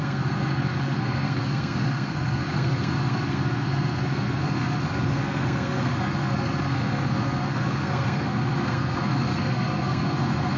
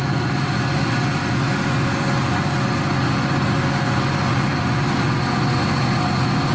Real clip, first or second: second